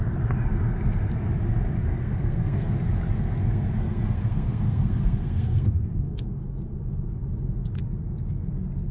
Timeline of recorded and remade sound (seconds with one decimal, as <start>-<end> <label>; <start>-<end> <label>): 0.0-1.9 recorded; 1.9-2.7 remade; 2.7-3.4 recorded; 3.4-6.4 remade; 6.4-8.9 recorded